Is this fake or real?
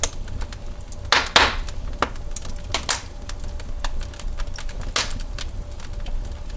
real